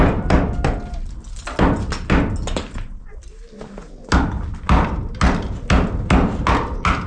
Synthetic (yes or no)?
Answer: no